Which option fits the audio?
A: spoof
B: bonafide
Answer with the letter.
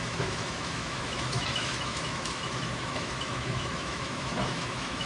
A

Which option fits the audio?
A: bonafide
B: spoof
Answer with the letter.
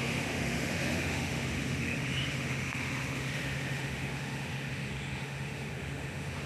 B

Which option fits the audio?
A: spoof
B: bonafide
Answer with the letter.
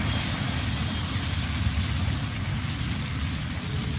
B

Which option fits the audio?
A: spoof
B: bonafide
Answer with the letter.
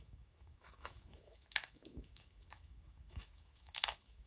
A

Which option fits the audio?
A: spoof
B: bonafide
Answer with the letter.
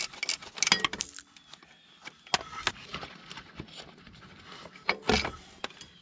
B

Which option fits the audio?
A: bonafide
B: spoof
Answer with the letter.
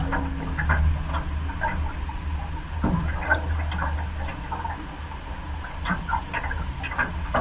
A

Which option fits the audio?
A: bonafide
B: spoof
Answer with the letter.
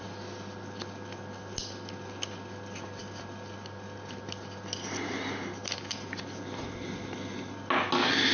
A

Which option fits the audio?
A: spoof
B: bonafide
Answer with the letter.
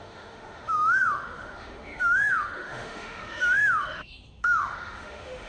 A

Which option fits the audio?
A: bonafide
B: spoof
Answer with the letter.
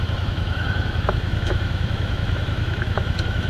B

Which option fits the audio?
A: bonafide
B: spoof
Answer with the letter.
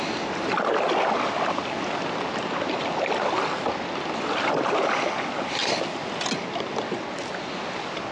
A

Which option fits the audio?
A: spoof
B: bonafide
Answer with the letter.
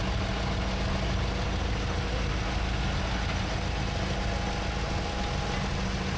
B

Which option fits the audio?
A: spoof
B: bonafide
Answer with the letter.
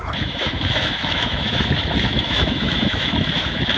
A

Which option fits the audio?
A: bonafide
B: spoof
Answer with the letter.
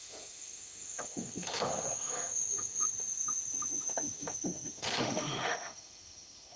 B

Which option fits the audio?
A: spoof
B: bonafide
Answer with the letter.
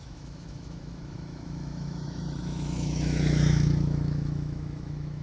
A